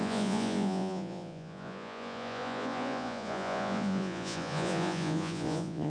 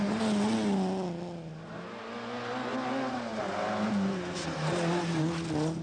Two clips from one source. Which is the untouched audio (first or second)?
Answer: second